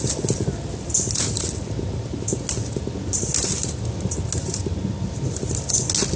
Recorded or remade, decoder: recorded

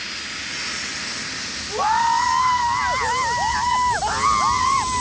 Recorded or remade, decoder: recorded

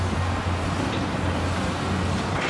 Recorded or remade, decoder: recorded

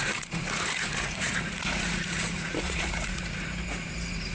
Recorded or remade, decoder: remade, vocoder, Vocos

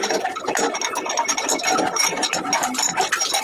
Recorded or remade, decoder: recorded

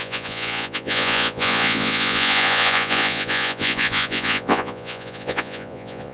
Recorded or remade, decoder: remade, vocoder, Vocos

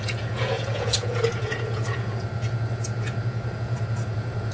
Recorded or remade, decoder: remade, vocoder, Vocos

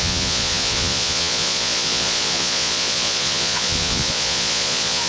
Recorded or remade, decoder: remade, vocoder, Vocos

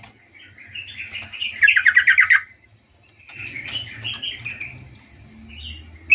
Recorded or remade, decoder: recorded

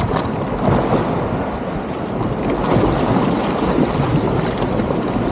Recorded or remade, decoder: recorded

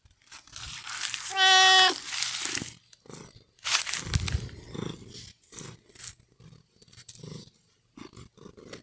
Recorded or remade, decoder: recorded